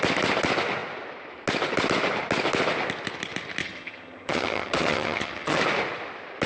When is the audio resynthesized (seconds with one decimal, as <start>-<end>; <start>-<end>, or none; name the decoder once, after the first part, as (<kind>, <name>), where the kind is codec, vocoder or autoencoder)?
3.6-5.6 (vocoder, HiFi-GAN)

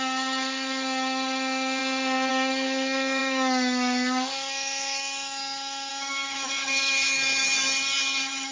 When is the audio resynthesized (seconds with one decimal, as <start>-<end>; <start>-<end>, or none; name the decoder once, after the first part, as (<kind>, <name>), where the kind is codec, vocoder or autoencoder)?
0.0-1.8 (autoencoder, DAC-VAE); 2.3-8.5